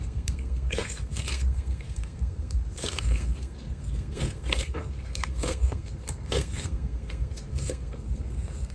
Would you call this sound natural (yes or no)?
no